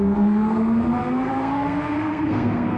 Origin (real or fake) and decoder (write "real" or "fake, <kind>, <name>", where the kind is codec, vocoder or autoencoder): fake, codec, SNAC